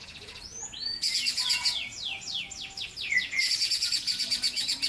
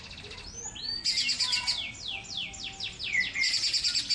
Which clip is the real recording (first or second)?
second